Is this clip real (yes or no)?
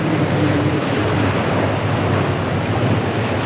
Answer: no